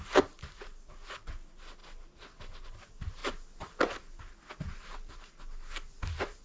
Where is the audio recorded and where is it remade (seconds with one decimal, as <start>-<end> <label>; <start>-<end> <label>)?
0.0-6.4 recorded

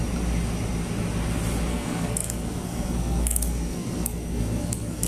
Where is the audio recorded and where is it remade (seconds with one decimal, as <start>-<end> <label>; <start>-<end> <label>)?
0.0-1.7 recorded; 1.7-5.1 remade

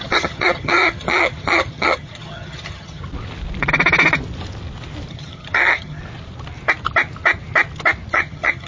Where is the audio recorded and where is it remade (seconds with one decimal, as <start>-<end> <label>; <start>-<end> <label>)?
0.0-3.0 remade; 3.0-5.1 recorded; 5.1-6.0 remade; 6.0-8.1 recorded; 8.1-8.7 remade

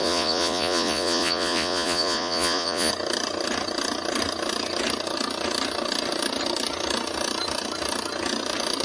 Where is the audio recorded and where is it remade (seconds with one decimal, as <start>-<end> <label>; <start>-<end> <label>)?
0.0-2.9 remade; 2.9-8.8 recorded

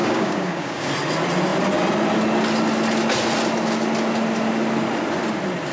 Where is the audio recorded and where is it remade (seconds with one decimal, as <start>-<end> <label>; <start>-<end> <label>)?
0.0-0.9 remade; 0.9-5.7 recorded